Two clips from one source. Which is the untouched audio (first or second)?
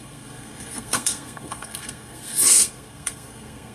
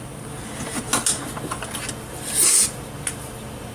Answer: second